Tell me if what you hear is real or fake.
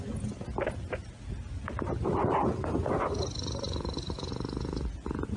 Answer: real